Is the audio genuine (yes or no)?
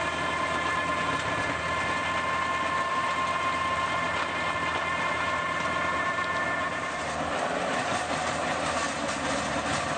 yes